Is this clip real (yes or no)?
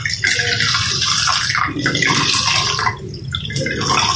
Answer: yes